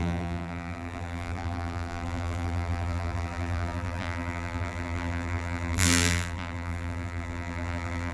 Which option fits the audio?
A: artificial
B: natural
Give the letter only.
A